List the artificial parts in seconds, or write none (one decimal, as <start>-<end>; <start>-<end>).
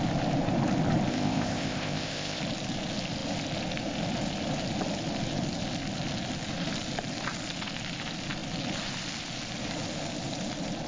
1.1-2.4